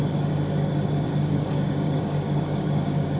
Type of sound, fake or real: fake